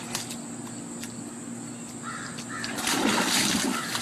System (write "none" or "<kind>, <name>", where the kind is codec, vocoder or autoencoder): none